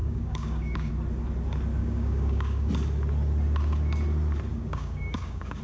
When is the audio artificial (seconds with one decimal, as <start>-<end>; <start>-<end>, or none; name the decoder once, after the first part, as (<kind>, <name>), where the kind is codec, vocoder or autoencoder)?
0.0-0.9 (codec, DAC); 1.8-2.7; 4.5-5.6